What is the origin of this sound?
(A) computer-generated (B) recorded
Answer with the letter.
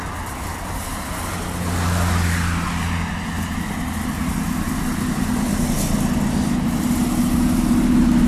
B